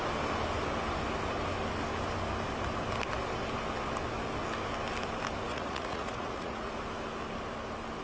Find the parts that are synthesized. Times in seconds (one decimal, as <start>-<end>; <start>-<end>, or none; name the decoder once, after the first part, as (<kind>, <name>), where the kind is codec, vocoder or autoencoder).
5.5-6.7 (vocoder, Vocos)